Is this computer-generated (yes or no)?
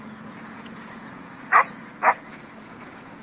yes